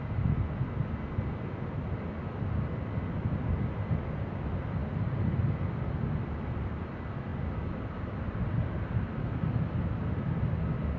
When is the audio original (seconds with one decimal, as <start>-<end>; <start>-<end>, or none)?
0.0-11.0